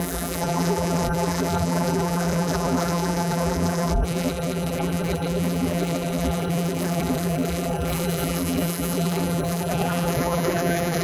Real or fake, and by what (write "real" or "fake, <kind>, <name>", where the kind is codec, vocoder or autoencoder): fake, vocoder, BigVGAN v2